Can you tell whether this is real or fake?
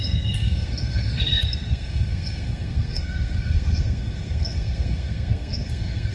fake